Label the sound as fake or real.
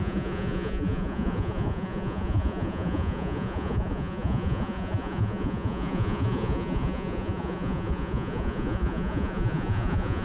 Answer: fake